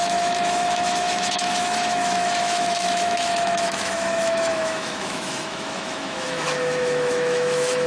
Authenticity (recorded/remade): remade